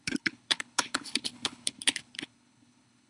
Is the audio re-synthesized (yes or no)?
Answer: yes